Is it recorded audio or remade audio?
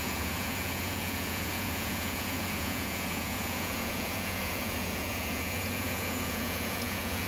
remade